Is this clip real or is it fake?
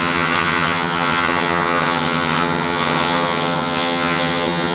fake